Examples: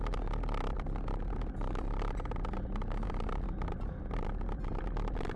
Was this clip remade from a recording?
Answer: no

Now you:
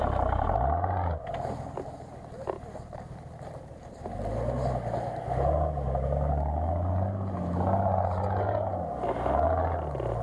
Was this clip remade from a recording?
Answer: no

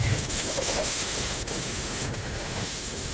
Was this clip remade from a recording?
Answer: yes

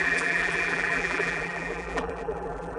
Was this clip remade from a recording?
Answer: yes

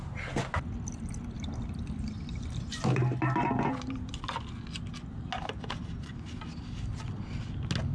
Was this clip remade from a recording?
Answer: no